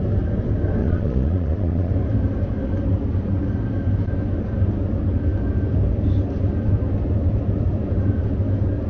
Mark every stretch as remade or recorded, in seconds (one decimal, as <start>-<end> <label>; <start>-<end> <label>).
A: 0.0-0.8 recorded; 0.8-1.9 remade; 1.9-8.9 recorded